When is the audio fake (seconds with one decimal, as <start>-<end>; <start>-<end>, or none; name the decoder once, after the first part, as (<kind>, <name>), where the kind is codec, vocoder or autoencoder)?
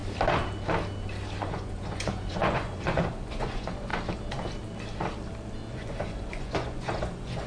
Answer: 1.4-3.9 (vocoder, Vocos); 5.7-7.5